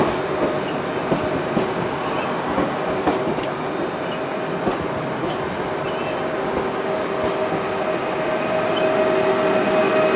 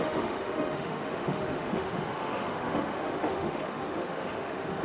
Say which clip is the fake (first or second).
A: second